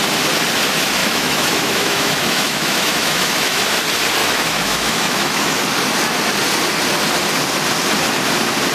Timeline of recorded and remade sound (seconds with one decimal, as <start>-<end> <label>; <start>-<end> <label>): 0.0-1.0 recorded; 1.0-3.6 remade; 3.6-4.2 recorded; 4.2-5.6 remade; 5.6-8.7 recorded